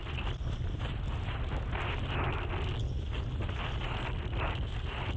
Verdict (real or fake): real